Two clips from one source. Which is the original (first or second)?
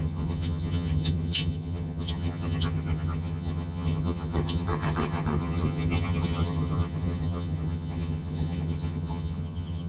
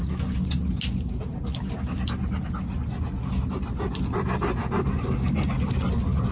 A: second